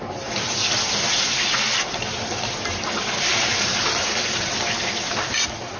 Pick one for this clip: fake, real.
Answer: real